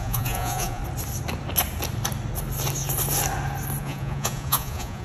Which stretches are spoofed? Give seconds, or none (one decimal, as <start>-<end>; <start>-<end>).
0.0-0.8; 3.8-5.0